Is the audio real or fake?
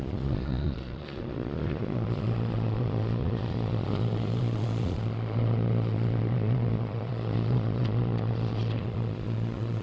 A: fake